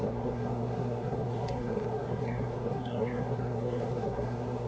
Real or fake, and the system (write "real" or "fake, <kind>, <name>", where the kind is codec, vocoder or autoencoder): fake, codec, SNAC